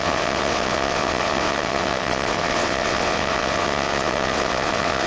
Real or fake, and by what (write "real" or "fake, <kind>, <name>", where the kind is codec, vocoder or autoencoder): fake, vocoder, WaveNeXt